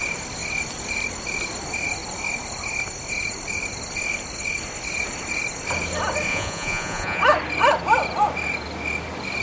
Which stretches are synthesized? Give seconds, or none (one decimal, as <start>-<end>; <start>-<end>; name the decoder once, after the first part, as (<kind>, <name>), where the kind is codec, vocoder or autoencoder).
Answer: 6.3-7.2 (vocoder, Vocos)